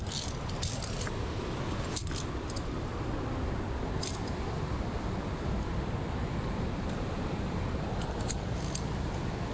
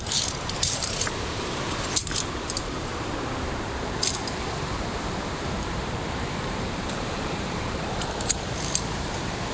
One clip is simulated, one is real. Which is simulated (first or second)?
second